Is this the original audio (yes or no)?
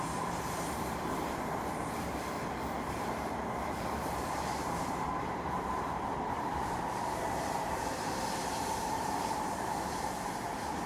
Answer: no